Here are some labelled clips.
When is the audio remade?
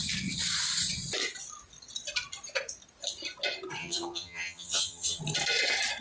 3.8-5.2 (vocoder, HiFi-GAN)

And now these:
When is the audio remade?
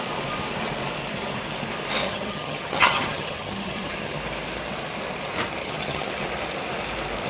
2.0-4.2 (vocoder, HiFi-GAN); 5.6-6.1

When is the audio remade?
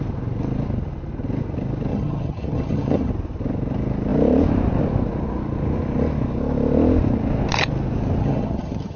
1.9-3.1 (vocoder, HiFi-GAN); 8.2-9.0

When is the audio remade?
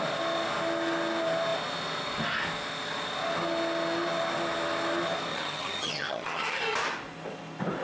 5.3-6.6 (vocoder, HiFi-GAN)